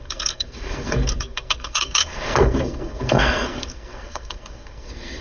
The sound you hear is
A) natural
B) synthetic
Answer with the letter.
B